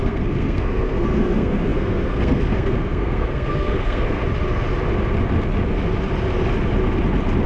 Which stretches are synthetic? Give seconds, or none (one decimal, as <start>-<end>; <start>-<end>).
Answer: 0.0-4.2